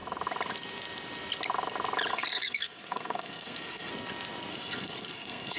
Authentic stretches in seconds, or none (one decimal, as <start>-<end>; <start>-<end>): 0.0-2.1; 3.9-4.5